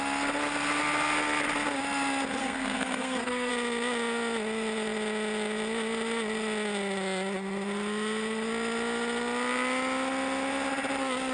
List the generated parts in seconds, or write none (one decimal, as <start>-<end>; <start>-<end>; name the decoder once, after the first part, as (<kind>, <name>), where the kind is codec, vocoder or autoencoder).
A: 2.4-3.5 (codec, SNAC)